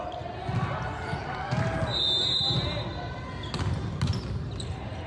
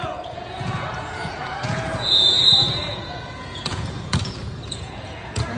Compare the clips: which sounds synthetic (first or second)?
second